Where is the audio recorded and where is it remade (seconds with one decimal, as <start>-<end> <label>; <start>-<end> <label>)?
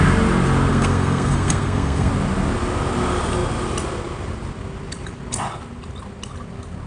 0.0-0.7 recorded; 0.7-2.1 remade; 2.1-6.9 recorded